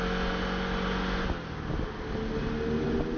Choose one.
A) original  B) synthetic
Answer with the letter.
A